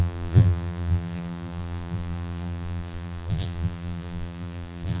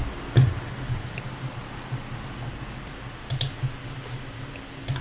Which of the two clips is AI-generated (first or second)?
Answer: first